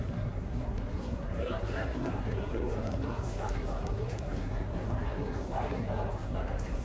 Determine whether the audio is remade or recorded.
remade